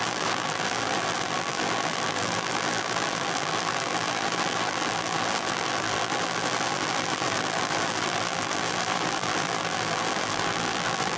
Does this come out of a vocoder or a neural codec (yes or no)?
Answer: yes